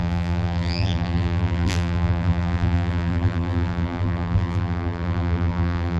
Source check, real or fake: fake